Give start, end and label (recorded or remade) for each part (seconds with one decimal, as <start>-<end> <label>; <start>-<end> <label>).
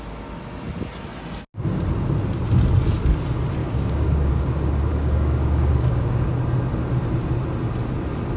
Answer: 0.0-3.6 recorded; 3.6-4.3 remade; 4.3-4.9 recorded; 4.9-6.3 remade; 6.3-8.4 recorded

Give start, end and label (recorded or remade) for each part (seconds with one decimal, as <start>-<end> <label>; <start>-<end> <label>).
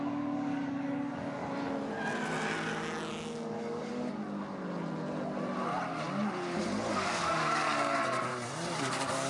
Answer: 0.0-1.4 remade; 1.4-3.1 recorded; 3.1-3.9 remade; 3.9-6.9 recorded; 6.9-8.3 remade; 8.3-8.8 recorded; 8.8-9.3 remade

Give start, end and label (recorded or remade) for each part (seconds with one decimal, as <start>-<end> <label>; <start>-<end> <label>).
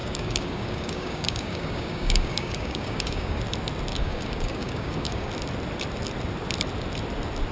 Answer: 0.0-3.4 remade; 3.4-3.9 recorded; 3.9-5.3 remade; 5.3-7.5 recorded